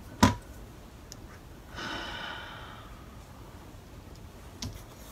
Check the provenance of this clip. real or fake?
real